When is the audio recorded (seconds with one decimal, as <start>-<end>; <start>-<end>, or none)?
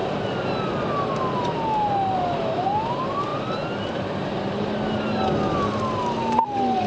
0.0-3.3